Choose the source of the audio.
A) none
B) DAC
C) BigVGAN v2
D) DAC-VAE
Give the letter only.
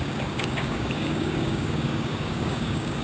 B